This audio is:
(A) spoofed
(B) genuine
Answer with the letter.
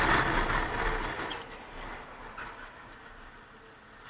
B